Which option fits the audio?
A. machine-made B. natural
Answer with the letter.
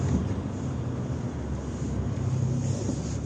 B